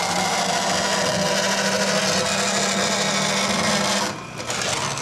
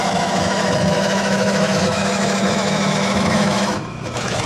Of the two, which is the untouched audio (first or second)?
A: first